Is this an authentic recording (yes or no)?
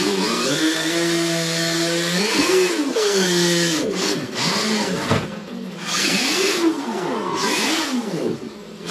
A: no